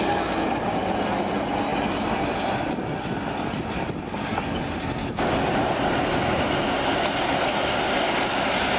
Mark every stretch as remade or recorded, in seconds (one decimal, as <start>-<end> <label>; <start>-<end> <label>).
0.0-8.8 recorded